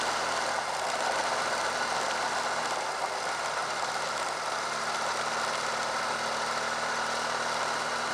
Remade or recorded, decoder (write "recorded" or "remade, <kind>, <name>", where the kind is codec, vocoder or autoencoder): recorded